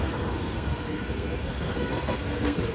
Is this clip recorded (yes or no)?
no